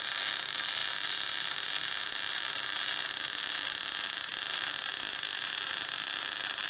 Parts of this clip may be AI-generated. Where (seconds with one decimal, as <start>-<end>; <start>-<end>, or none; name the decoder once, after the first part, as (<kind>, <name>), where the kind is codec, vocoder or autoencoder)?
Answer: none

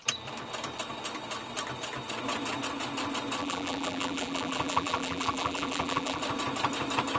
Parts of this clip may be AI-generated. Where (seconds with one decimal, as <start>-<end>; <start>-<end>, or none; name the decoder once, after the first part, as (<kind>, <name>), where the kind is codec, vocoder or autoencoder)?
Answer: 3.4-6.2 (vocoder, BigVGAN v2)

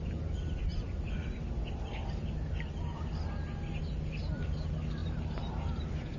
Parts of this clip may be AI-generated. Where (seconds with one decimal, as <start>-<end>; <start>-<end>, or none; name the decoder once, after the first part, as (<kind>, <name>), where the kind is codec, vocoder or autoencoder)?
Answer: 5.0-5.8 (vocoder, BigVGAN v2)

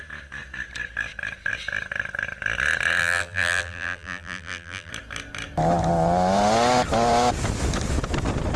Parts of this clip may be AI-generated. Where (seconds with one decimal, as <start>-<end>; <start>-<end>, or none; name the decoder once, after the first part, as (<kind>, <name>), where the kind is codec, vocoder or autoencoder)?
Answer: 3.0-4.9 (vocoder, BigVGAN v2)

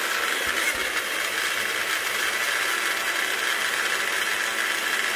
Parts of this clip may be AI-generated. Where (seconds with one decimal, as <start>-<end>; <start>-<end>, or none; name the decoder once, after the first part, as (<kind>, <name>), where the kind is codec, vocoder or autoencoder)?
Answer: none

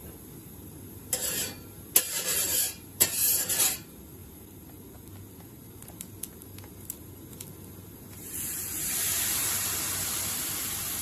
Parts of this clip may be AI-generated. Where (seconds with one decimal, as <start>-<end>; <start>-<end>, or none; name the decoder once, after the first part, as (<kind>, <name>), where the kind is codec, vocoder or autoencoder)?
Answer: none

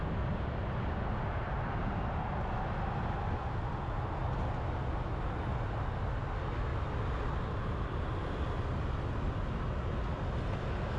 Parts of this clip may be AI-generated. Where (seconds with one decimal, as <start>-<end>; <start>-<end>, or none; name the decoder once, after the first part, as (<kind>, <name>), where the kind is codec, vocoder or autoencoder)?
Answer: 6.7-7.3 (vocoder, BigVGAN v2)